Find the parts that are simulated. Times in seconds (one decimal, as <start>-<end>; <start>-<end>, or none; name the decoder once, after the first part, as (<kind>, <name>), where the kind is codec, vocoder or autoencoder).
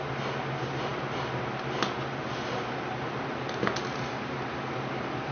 none